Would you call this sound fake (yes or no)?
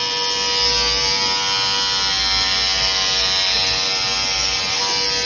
no